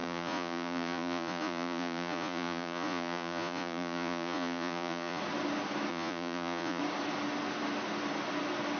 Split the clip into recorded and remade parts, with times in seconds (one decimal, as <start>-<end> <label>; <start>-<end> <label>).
0.0-5.2 remade; 5.2-5.9 recorded; 5.9-6.8 remade; 6.8-8.8 recorded